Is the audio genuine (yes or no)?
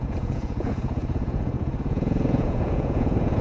no